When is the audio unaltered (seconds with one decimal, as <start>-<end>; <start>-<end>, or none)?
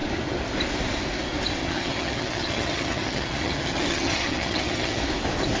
0.0-1.6; 5.0-5.6